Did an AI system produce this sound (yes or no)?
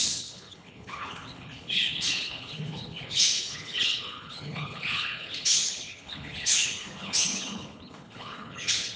yes